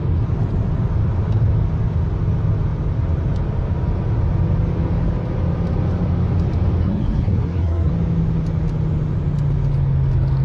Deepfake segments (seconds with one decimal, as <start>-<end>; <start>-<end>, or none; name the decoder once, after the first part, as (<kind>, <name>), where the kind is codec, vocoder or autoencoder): 6.8-7.9 (codec, SNAC)